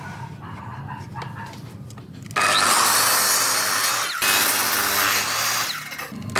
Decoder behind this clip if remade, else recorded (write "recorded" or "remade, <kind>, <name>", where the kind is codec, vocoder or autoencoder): recorded